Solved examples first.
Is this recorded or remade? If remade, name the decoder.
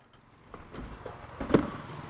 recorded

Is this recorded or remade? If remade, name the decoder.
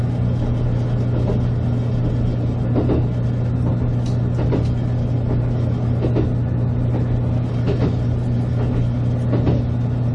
recorded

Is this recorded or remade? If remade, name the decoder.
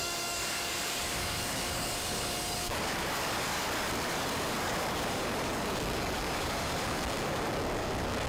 remade, codec, DAC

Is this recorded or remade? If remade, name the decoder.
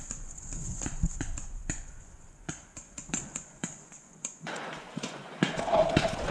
remade, vocoder, Vocos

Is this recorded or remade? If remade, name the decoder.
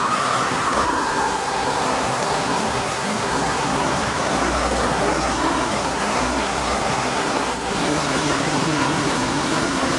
remade, codec, SNAC